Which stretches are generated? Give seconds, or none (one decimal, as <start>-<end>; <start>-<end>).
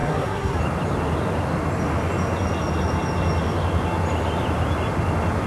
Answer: 0.0-0.6